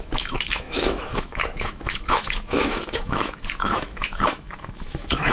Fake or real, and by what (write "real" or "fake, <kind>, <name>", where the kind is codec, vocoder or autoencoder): fake, autoencoder, DAC-VAE